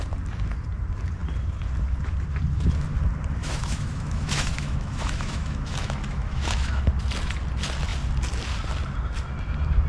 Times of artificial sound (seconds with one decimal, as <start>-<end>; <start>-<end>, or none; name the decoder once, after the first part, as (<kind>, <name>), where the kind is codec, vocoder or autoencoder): 3.4-6.8 (autoencoder, DAC-VAE)